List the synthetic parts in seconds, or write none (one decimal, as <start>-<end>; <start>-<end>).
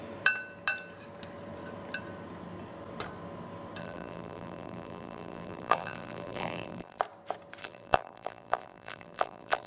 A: 3.8-7.0; 7.6-9.7